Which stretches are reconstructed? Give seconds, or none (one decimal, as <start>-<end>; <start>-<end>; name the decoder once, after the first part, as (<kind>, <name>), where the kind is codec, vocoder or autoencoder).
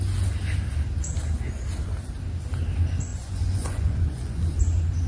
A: 3.1-4.5 (vocoder, Vocos)